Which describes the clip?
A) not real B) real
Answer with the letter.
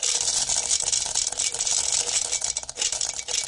B